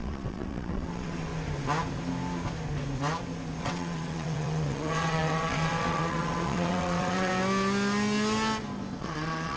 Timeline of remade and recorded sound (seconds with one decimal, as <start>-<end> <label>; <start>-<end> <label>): 0.0-1.3 remade; 1.3-3.6 recorded; 3.6-7.3 remade; 7.3-9.0 recorded; 9.0-9.6 remade